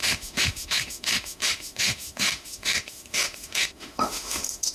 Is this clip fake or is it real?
fake